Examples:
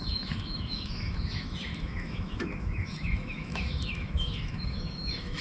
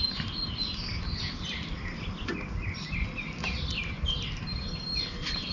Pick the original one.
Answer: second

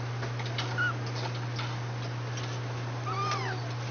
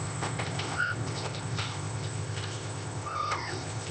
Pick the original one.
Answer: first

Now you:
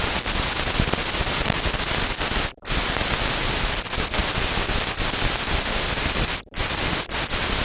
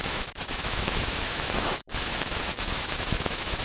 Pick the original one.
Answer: first